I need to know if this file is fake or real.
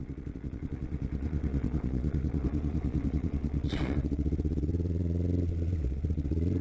fake